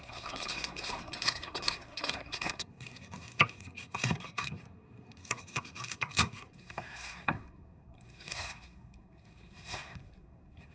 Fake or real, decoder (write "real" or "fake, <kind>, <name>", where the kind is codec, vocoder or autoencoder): fake, codec, SNAC